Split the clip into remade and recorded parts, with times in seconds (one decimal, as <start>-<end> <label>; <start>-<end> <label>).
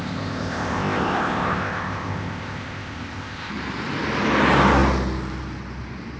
0.0-3.5 remade; 3.5-6.2 recorded